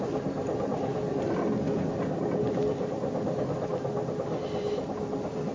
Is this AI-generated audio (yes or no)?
no